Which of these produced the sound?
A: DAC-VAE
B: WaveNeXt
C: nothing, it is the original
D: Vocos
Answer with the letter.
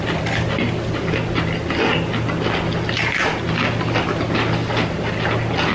C